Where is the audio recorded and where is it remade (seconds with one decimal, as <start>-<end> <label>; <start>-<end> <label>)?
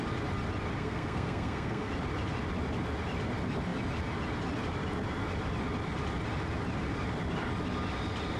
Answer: 0.0-0.8 recorded; 0.8-1.9 remade; 1.9-8.4 recorded